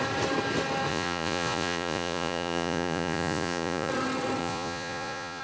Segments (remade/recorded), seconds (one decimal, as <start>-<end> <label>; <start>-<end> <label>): 0.0-0.9 recorded; 0.9-3.9 remade; 3.9-4.4 recorded; 4.4-5.4 remade